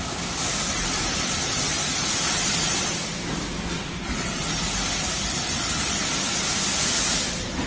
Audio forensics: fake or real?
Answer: real